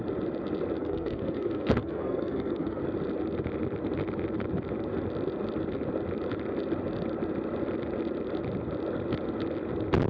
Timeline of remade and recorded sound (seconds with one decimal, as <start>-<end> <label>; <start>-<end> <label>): 0.0-0.8 recorded; 0.8-2.8 remade; 2.8-10.1 recorded